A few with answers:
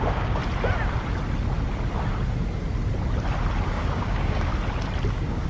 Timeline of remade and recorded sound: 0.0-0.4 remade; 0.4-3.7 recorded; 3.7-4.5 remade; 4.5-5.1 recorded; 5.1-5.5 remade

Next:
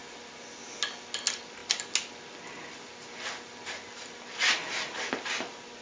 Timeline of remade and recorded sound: 0.0-5.8 recorded

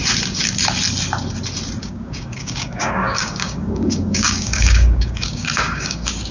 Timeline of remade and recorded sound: 0.0-1.8 recorded; 1.8-6.3 remade

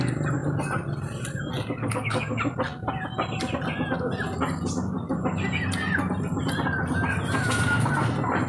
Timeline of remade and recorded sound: 0.0-1.8 recorded; 1.8-2.4 remade; 2.4-8.5 recorded

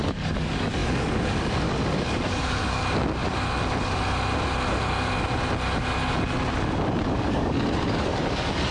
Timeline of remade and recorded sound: 0.0-2.8 remade; 2.8-7.1 recorded; 7.1-8.7 remade